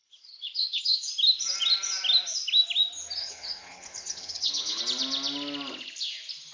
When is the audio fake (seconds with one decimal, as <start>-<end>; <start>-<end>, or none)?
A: 0.0-1.1; 3.2-4.8